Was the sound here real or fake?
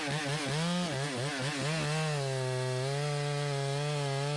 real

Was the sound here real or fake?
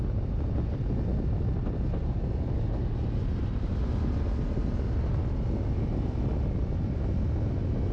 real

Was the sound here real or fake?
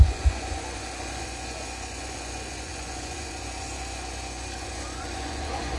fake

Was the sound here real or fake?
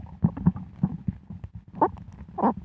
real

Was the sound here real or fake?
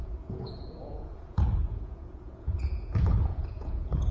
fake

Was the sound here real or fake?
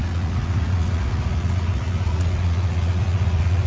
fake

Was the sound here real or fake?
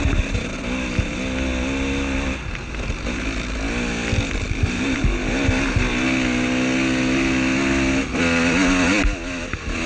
real